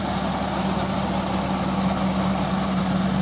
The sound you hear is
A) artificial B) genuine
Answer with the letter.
B